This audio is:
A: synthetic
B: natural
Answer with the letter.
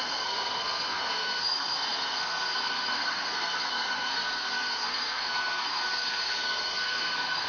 A